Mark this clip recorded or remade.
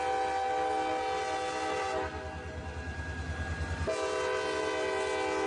recorded